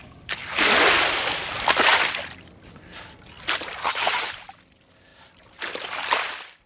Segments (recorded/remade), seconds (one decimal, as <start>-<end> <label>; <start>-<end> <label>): 0.0-3.8 recorded; 3.8-4.3 remade; 4.3-6.7 recorded